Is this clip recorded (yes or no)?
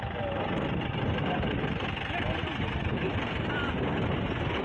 yes